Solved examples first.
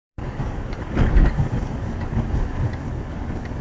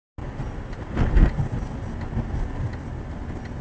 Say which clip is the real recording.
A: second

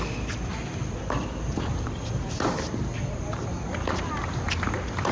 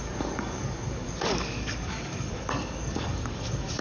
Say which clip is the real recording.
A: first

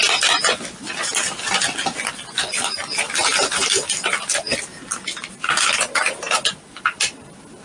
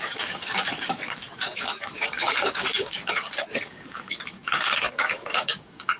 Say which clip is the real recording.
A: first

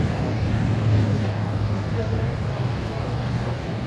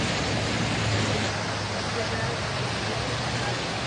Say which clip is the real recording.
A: second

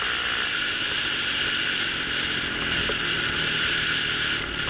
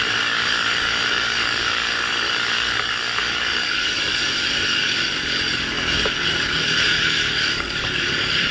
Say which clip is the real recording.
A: first